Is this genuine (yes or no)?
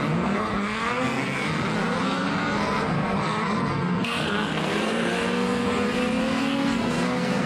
no